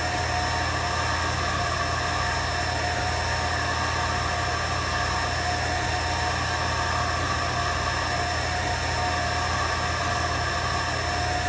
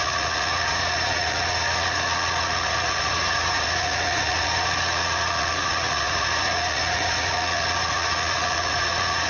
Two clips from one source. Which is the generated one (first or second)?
second